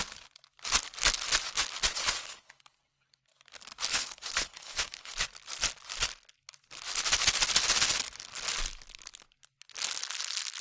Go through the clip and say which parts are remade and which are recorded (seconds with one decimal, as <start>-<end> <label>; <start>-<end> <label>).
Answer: 0.0-1.9 recorded; 1.9-3.2 remade; 3.2-3.9 recorded; 3.9-5.1 remade; 5.1-10.6 recorded